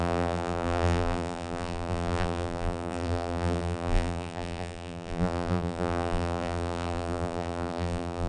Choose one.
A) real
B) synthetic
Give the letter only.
B